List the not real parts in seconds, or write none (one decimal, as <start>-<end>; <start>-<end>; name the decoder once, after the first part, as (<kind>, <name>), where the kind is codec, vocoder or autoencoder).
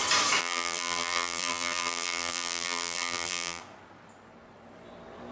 0.4-3.6 (vocoder, BigVGAN v2)